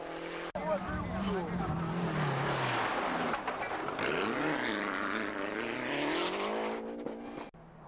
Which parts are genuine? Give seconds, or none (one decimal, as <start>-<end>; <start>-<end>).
0.0-7.9